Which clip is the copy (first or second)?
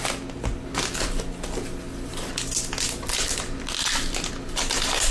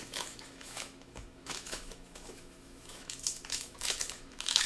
second